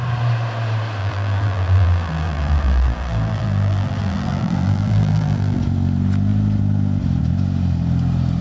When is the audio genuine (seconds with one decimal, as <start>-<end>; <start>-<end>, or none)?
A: 0.0-1.0; 5.6-8.4